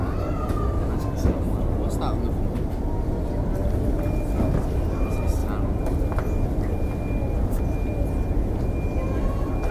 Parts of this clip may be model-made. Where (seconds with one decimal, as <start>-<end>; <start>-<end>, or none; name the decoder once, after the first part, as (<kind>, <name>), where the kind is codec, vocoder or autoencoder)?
none